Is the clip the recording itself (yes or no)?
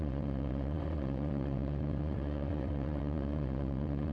no